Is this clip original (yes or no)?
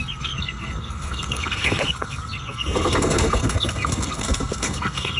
no